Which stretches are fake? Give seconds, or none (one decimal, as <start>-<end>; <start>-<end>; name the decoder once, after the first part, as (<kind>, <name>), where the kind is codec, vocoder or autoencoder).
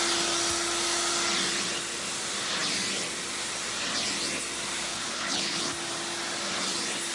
4.9-5.7 (codec, HILCodec)